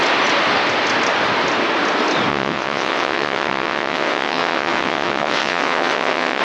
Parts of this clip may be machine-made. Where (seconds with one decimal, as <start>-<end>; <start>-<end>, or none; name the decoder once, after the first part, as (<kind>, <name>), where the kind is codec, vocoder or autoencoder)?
2.3-6.4 (vocoder, WaveNeXt)

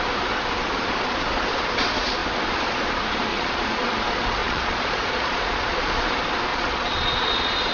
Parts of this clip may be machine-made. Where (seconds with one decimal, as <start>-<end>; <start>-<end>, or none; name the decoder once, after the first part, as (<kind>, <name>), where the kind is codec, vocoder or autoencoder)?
3.3-4.0 (vocoder, Vocos); 4.4-6.1; 6.5-7.7

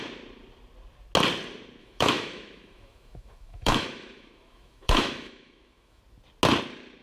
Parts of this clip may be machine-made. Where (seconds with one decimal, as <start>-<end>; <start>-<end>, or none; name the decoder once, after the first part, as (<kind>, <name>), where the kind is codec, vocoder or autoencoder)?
1.8-6.0 (autoencoder, DAC-VAE)